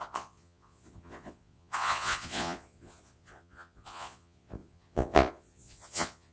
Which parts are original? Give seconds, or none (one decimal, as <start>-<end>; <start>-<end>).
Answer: none